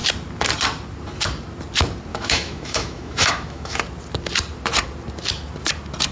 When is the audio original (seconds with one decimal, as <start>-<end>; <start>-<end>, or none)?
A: 0.0-2.1; 3.8-6.1